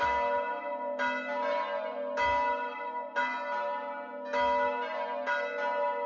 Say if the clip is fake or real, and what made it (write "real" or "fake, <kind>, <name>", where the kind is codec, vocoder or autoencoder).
real